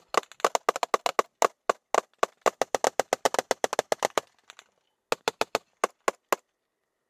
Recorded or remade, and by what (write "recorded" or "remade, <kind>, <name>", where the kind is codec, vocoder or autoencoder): recorded